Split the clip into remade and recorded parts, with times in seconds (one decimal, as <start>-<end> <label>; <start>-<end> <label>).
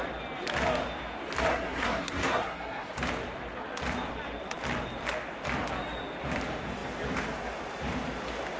0.0-1.5 recorded; 1.5-2.9 remade; 2.9-8.6 recorded